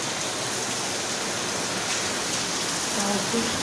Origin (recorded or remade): recorded